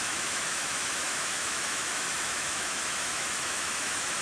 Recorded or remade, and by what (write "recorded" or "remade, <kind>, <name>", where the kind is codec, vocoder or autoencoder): remade, autoencoder, DAC-VAE